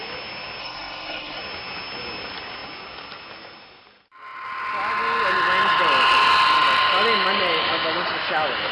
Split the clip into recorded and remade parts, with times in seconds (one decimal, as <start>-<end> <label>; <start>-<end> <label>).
0.0-0.6 recorded; 0.6-1.4 remade; 1.4-8.7 recorded